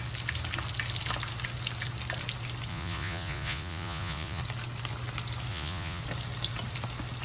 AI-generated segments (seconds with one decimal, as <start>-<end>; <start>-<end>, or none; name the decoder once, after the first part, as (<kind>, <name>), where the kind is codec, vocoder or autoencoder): 2.7-4.4 (vocoder, Vocos); 5.5-6.0